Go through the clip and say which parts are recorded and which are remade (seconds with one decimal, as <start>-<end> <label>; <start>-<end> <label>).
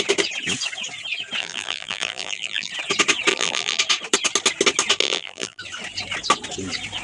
0.0-1.4 recorded; 1.4-2.7 remade; 2.7-3.3 recorded; 3.3-3.8 remade; 3.8-5.0 recorded; 5.0-5.6 remade; 5.6-7.0 recorded